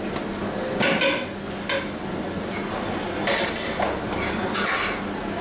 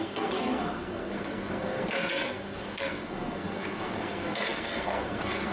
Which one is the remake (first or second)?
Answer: second